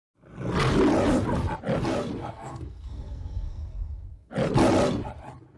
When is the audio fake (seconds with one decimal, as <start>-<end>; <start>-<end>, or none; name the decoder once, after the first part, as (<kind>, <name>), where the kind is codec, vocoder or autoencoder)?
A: 2.2-4.3 (codec, SNAC)